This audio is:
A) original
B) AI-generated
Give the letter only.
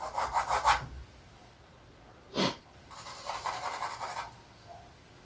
A